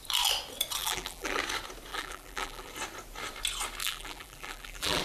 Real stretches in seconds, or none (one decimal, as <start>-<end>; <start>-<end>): 0.0-0.8; 1.4-1.9; 2.7-3.8